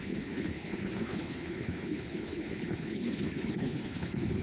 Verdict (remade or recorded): remade